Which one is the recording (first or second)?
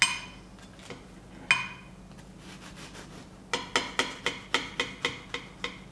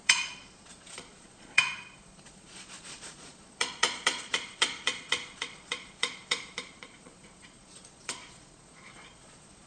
first